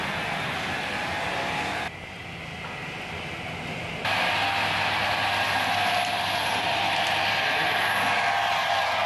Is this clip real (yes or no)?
yes